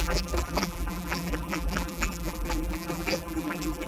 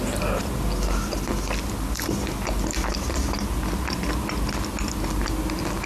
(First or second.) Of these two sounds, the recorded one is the second